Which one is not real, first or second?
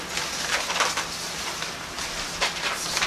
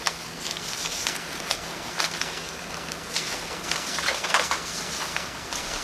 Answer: second